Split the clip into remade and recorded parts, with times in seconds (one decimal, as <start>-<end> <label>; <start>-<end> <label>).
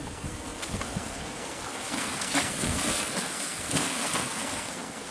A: 0.0-5.1 remade